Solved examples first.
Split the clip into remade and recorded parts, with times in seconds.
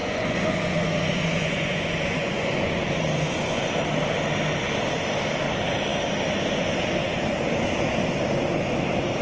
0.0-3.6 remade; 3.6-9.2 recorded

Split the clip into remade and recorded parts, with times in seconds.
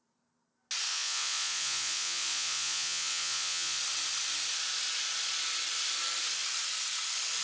0.0-0.9 recorded; 0.9-3.8 remade; 3.8-7.4 recorded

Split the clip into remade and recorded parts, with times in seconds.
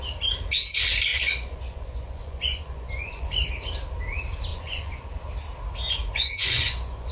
0.0-1.1 recorded; 1.1-3.3 remade; 3.3-4.5 recorded; 4.5-5.1 remade; 5.1-6.0 recorded; 6.0-7.1 remade